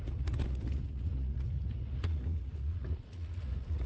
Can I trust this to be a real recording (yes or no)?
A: no